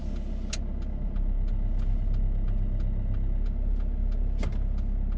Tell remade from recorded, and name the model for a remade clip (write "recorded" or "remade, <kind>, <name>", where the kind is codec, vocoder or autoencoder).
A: recorded